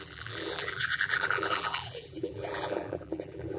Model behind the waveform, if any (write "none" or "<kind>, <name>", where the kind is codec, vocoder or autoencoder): vocoder, BigVGAN v2